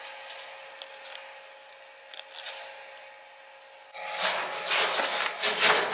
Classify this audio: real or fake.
real